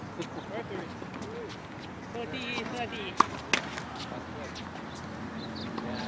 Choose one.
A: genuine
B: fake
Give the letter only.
A